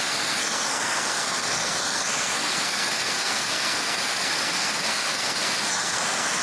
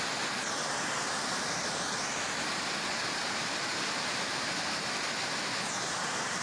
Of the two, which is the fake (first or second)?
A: first